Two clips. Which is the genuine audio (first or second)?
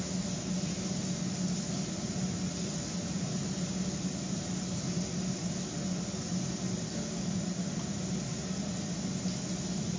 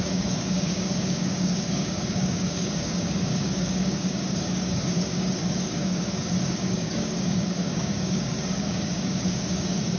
first